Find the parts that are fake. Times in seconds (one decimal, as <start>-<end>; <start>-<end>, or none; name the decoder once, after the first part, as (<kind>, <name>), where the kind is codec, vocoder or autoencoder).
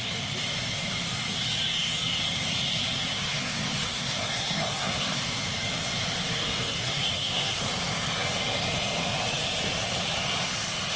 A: 3.1-5.2 (codec, SNAC); 6.7-7.6